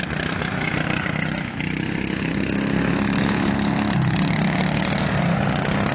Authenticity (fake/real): real